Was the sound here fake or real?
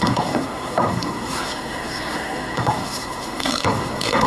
fake